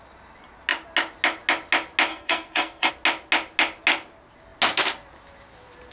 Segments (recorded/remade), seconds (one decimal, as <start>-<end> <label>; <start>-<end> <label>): 0.0-2.1 recorded; 2.1-2.9 remade; 2.9-5.9 recorded